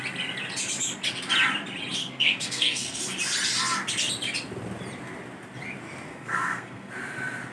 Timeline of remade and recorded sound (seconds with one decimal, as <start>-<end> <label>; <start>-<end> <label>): 0.0-2.0 recorded; 2.0-3.0 remade; 3.0-6.1 recorded; 6.1-6.9 remade; 6.9-7.5 recorded